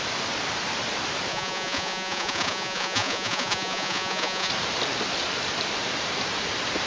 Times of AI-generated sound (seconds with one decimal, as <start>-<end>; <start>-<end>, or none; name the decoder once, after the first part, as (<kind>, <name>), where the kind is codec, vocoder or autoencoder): 1.3-4.5 (vocoder, Vocos)